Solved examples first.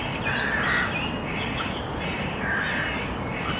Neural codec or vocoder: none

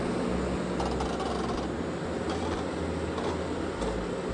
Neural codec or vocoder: none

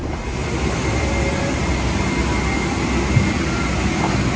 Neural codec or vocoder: none